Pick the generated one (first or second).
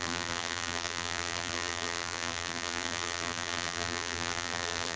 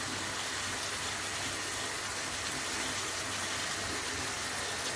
first